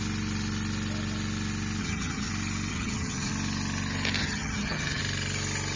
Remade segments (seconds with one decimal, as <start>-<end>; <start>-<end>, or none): 1.8-2.3; 2.7-3.3; 4.2-5.0